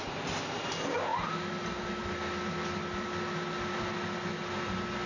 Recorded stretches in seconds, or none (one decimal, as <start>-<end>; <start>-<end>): 0.0-5.1